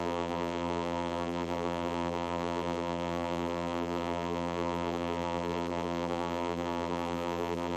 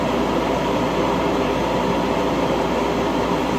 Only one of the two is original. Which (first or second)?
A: second